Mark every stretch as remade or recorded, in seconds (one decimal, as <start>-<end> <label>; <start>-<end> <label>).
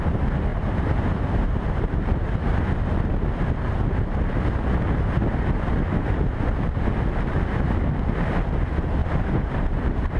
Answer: 0.0-0.5 recorded; 0.5-2.6 remade; 2.6-9.0 recorded; 9.0-10.2 remade